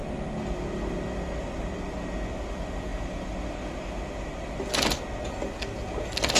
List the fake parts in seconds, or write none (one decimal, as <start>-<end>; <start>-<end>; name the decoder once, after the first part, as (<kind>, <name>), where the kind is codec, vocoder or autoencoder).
none